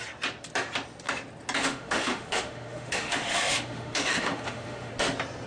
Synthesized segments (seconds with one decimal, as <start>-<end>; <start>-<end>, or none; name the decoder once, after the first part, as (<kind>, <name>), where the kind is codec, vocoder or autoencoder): 1.6-4.9 (autoencoder, DAC-VAE)